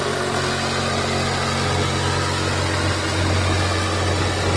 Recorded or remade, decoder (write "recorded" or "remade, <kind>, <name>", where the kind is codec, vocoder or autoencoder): recorded